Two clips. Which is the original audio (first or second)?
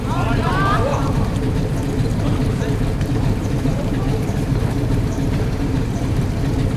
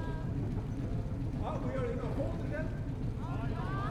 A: second